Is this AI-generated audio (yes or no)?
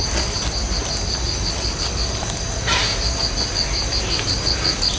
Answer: no